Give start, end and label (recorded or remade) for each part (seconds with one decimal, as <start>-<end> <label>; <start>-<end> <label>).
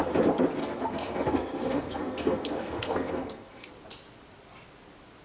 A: 0.0-0.6 recorded; 0.6-3.7 remade; 3.7-5.2 recorded